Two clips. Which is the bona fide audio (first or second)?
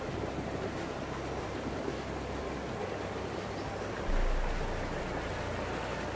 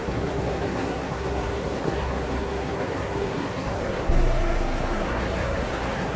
first